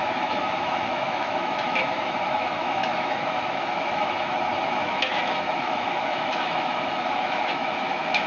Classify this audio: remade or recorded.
remade